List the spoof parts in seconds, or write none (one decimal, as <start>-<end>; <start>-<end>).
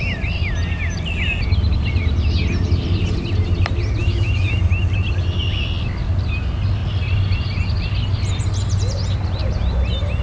4.0-4.6